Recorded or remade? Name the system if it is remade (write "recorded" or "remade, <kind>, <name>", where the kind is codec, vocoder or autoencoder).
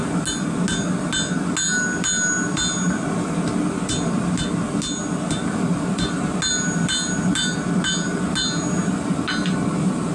recorded